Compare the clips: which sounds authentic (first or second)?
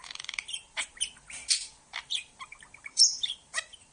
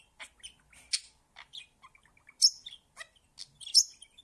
second